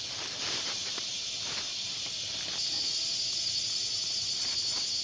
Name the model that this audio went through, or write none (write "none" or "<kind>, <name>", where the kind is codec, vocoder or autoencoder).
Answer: none